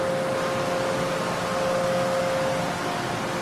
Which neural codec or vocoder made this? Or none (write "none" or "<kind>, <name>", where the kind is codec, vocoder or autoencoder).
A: none